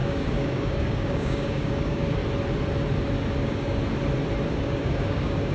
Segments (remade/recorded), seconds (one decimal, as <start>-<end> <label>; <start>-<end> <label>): 0.0-2.2 remade; 2.2-3.4 recorded; 3.4-3.8 remade; 3.8-4.6 recorded; 4.6-5.5 remade